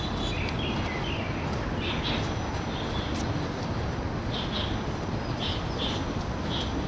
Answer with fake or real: real